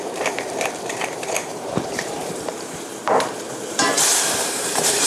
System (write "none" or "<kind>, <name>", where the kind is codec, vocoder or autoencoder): vocoder, BigVGAN v2